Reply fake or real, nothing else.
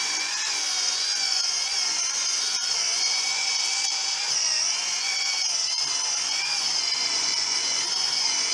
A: fake